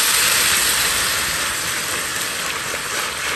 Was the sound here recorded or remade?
recorded